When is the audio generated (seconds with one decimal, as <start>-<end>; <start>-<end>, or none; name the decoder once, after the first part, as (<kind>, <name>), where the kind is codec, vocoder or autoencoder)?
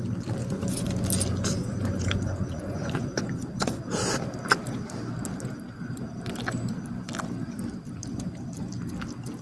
0.4-0.9 (vocoder, Vocos); 1.6-3.8